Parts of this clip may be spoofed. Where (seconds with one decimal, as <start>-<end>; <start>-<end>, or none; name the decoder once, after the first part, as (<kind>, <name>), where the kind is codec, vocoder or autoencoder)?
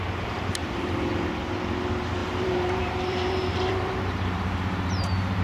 0.6-1.3 (vocoder, BigVGAN v2); 2.2-5.4